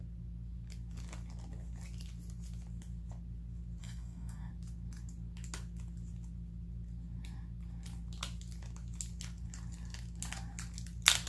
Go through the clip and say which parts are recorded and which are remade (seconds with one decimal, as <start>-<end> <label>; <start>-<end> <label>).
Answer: 0.0-3.8 recorded; 3.8-4.5 remade; 4.5-11.3 recorded